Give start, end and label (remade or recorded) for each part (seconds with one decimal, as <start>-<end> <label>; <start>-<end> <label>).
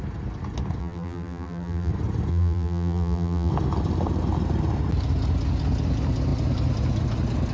0.0-0.8 recorded; 0.8-1.9 remade; 1.9-2.3 recorded; 2.3-3.5 remade; 3.5-7.5 recorded